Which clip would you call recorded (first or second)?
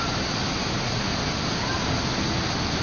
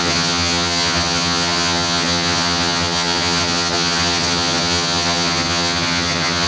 first